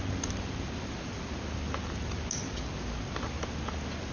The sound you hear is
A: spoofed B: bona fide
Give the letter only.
B